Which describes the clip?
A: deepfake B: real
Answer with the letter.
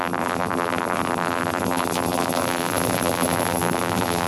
A